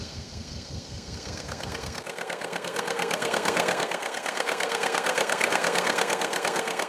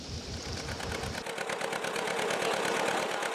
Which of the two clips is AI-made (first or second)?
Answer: first